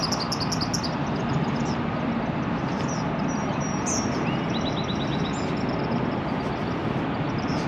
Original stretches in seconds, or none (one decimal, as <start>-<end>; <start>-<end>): 0.0-7.7